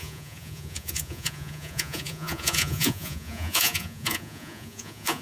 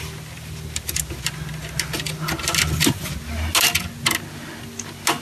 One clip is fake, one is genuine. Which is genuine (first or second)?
second